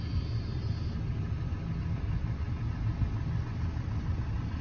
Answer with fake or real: real